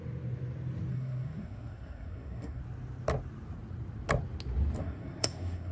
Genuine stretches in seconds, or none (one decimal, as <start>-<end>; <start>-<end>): 0.0-0.9; 2.6-4.8